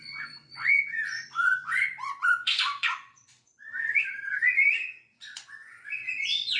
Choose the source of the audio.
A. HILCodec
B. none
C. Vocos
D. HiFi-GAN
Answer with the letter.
C